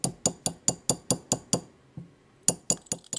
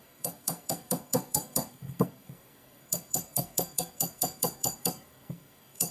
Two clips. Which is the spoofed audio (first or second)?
second